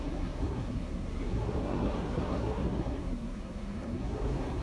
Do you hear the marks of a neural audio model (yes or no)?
yes